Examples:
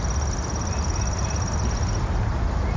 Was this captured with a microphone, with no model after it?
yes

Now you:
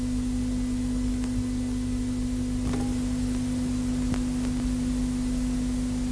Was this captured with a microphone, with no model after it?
yes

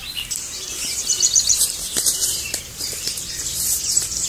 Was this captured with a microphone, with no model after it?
no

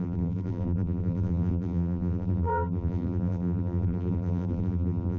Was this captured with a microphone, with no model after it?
no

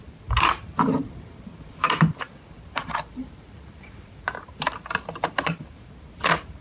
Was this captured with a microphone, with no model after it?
no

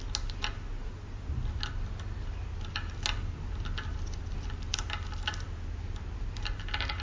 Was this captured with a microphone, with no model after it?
yes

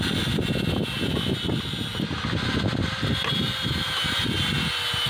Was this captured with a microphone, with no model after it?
yes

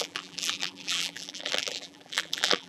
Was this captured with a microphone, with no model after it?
no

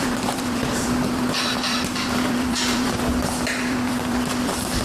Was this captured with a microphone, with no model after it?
no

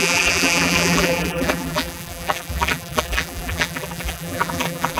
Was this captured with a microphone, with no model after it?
no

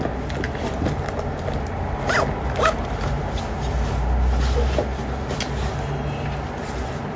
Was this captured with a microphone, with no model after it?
yes